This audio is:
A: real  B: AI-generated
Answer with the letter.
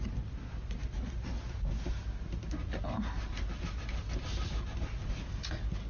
A